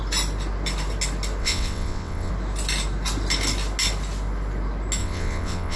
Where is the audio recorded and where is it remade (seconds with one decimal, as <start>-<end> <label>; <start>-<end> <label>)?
0.0-1.4 recorded; 1.4-2.3 remade; 2.3-5.0 recorded; 5.0-5.8 remade